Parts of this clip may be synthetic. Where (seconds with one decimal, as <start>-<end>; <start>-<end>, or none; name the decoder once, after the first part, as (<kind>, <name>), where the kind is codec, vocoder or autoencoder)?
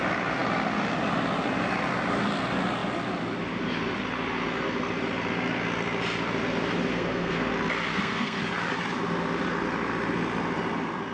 6.9-7.5 (codec, SNAC); 7.9-8.4